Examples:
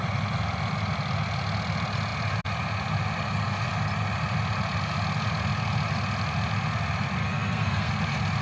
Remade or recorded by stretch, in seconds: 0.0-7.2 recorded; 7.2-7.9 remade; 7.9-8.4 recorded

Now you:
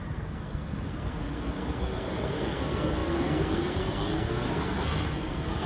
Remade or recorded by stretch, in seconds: 0.0-5.7 remade